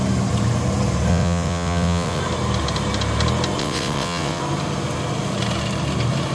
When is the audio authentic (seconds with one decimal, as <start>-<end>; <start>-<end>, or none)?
0.0-1.1; 2.2-3.6; 4.4-6.3